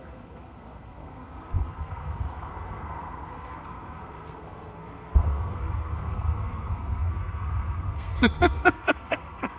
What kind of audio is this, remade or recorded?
remade